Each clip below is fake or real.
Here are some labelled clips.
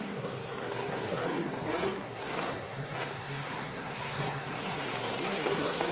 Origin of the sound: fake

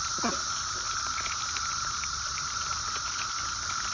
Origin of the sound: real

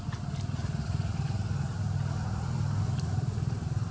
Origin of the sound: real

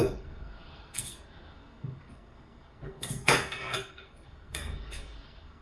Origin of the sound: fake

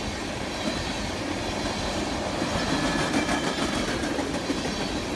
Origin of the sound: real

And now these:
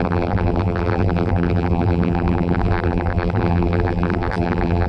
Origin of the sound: fake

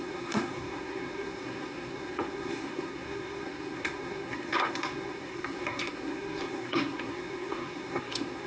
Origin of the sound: fake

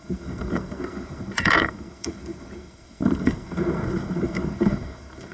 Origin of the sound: fake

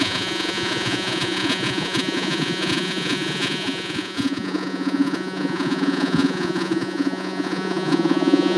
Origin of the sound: fake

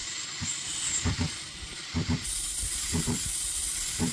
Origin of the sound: fake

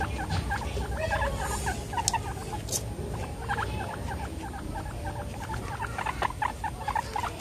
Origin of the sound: real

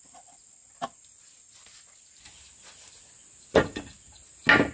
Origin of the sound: real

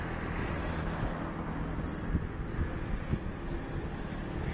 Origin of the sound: real